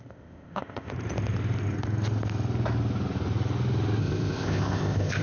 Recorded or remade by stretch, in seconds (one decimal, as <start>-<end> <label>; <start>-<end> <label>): 0.0-0.9 remade; 0.9-4.0 recorded; 4.0-5.2 remade